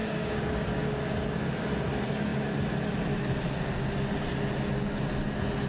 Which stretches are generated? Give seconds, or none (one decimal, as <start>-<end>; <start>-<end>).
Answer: 0.0-0.9